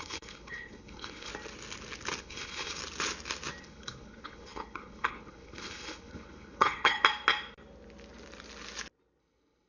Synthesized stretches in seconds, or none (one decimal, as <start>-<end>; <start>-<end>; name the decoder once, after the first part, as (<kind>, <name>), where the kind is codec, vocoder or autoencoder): 0.0-1.3 (codec, HILCodec); 2.2-2.8; 3.6-7.0; 9.2-9.7